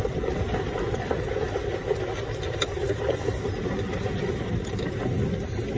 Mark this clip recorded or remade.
recorded